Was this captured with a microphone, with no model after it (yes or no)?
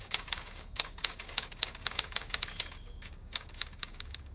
no